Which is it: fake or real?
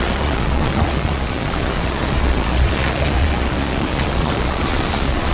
fake